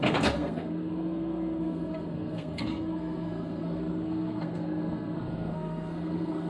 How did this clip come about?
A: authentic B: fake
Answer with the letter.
B